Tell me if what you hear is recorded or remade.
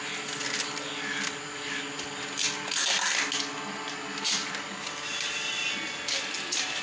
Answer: recorded